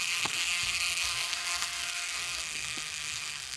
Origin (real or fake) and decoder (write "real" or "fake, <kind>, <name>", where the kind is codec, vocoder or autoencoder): fake, codec, SNAC